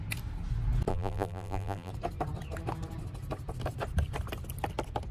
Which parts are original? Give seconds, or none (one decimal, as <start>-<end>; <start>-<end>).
0.0-0.9; 1.9-5.1